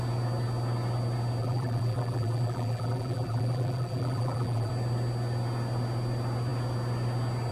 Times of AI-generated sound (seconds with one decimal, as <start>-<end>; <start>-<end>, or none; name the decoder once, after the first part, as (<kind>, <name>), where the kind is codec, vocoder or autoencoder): 1.4-4.7 (vocoder, BigVGAN v2)